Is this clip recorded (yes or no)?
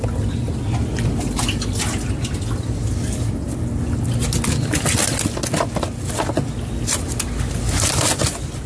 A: yes